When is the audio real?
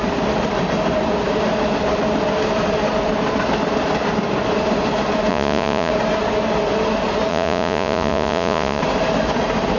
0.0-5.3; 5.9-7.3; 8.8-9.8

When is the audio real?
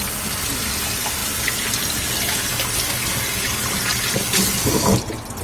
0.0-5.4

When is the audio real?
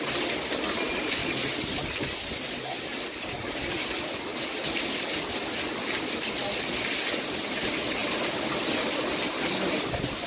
0.0-10.3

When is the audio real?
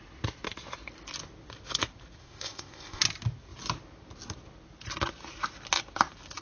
0.0-2.2; 3.0-6.4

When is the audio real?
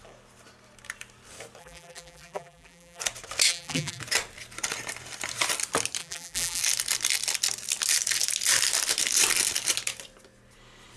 0.0-1.6; 3.0-3.5; 4.0-6.0; 6.6-11.0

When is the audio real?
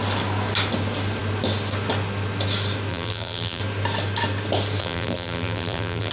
0.0-2.9; 3.6-4.8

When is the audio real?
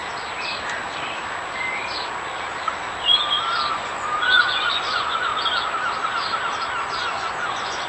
0.0-3.7; 5.3-7.0